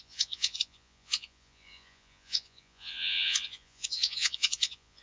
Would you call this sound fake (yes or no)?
yes